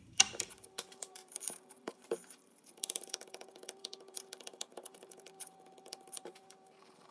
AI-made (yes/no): yes